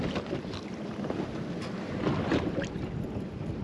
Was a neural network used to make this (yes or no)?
no